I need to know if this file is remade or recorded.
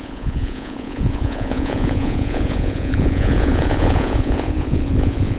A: remade